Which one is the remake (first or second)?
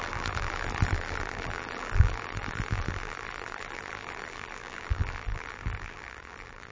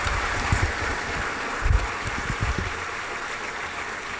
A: first